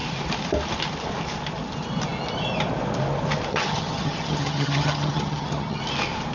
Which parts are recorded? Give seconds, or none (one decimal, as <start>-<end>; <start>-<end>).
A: 0.0-3.5; 5.8-6.3